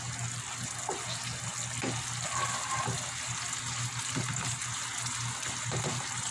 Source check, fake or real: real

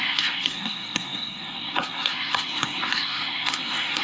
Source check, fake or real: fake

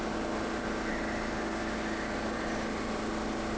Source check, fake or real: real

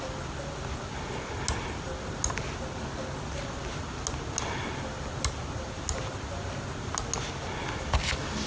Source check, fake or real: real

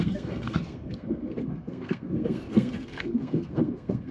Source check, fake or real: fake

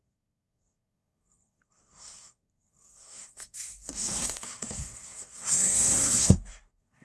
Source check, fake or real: fake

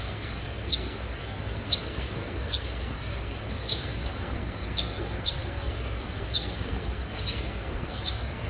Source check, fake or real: fake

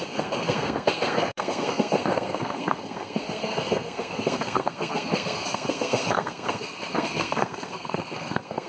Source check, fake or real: fake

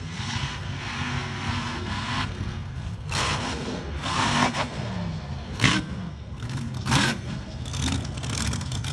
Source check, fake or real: fake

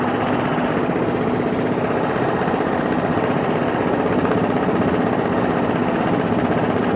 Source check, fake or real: real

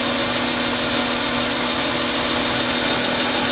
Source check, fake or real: real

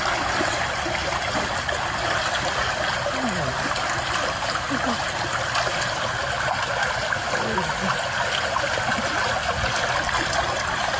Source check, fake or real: real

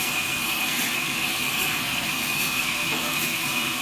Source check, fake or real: fake